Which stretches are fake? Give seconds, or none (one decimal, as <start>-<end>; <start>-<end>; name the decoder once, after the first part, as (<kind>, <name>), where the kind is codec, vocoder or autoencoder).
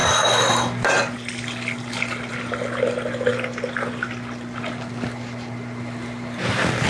0.0-3.3 (vocoder, BigVGAN v2); 4.6-6.9